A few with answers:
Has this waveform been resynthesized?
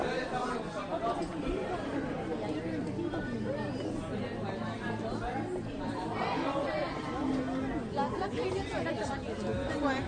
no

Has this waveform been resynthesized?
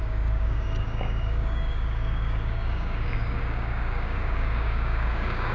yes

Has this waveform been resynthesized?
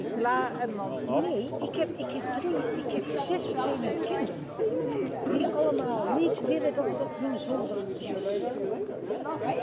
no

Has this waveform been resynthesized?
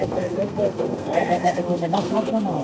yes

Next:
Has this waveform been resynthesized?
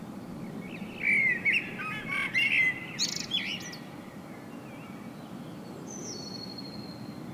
no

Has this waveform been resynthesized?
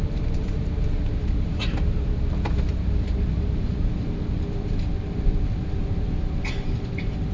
yes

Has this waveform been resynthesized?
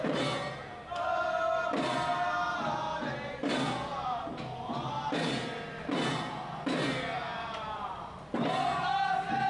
no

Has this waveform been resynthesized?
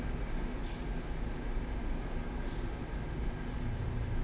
no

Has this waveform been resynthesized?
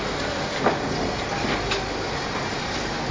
no